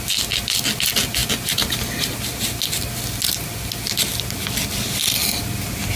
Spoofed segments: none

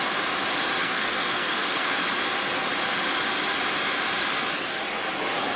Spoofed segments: 0.8-2.0 (codec, SNAC)

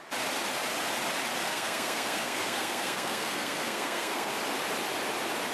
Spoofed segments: 1.4-4.3 (codec, SNAC)

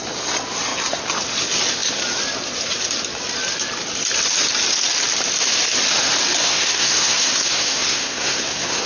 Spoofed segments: 6.4-8.9 (codec, SNAC)